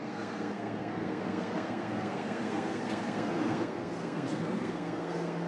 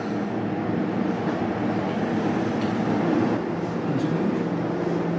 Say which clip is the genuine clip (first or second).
second